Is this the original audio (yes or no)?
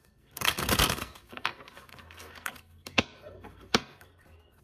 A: no